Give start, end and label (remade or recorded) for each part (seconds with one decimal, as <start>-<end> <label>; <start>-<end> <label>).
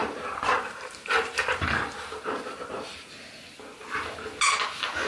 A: 0.0-3.1 remade; 3.1-5.1 recorded